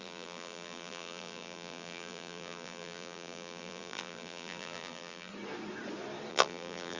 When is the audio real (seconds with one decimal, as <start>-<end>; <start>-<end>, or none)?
5.3-6.3